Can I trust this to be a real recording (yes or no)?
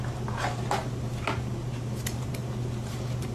no